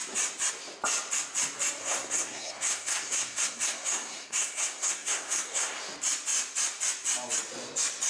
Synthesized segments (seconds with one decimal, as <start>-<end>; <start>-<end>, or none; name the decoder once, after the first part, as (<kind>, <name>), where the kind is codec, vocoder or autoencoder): 1.8-5.8 (codec, SNAC)